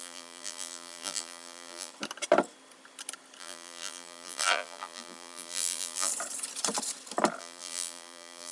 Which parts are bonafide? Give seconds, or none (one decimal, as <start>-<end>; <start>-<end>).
1.9-3.4; 6.1-7.4